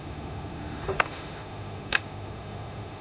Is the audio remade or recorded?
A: remade